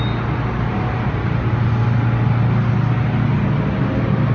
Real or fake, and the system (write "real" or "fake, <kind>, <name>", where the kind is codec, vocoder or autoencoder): real